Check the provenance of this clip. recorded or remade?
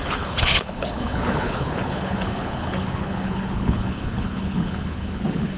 remade